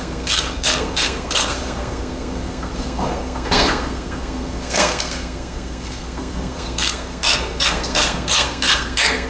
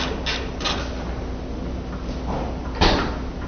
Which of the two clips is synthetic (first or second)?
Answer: first